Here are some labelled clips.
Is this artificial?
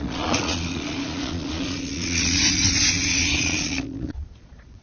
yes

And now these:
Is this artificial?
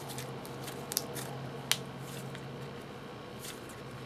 no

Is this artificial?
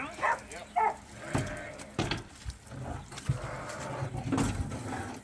no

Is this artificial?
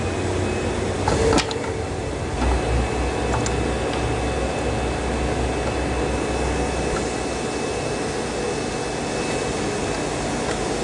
no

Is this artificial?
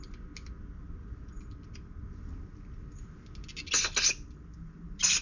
no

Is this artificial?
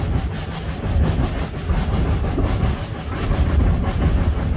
no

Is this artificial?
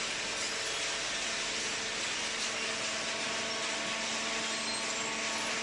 no